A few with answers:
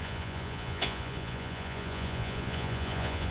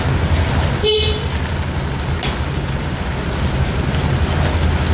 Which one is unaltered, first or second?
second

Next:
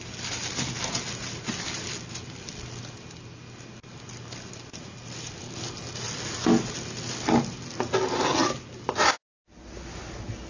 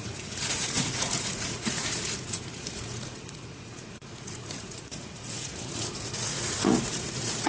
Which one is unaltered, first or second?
first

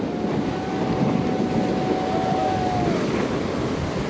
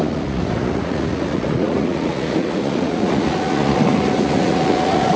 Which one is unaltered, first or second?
first